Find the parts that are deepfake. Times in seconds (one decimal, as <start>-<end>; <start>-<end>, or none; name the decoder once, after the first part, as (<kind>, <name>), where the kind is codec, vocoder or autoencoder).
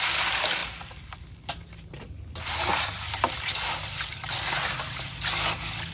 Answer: none